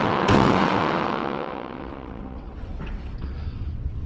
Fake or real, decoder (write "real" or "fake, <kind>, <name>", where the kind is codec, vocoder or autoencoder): fake, vocoder, WaveNeXt